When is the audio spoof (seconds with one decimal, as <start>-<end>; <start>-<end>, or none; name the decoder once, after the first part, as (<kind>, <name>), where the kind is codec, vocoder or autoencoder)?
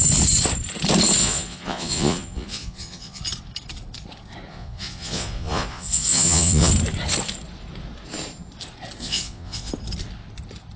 1.2-3.2 (vocoder, Vocos); 4.5-6.7; 9.0-9.7